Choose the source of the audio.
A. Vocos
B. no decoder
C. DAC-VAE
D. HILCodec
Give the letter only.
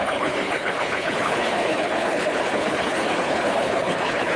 D